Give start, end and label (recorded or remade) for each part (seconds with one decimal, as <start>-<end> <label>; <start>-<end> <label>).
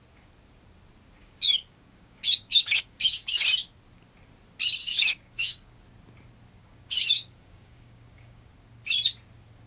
0.0-1.2 recorded; 1.2-3.4 remade; 3.4-4.8 recorded; 4.8-5.7 remade; 5.7-6.6 recorded; 6.6-8.5 remade; 8.5-9.7 recorded